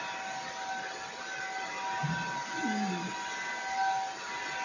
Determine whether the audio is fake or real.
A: real